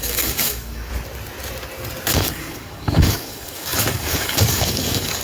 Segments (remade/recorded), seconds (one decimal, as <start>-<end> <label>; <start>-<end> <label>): 0.0-0.9 remade; 0.9-2.1 recorded; 2.1-5.2 remade